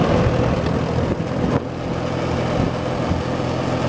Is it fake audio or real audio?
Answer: real